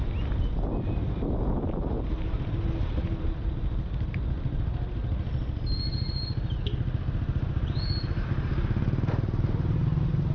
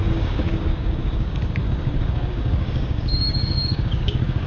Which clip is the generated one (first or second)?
second